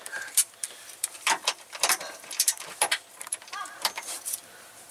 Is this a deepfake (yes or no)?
yes